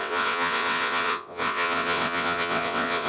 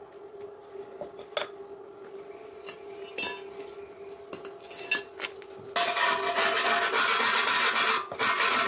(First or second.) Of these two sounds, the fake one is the first